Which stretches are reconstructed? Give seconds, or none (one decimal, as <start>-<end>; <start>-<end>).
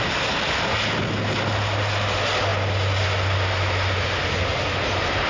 none